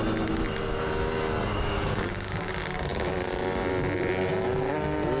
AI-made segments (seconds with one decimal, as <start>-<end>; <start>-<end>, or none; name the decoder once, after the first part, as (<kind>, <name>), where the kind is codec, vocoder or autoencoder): 1.5-2.5 (codec, DAC)